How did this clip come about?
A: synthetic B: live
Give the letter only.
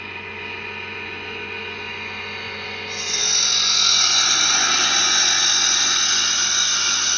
A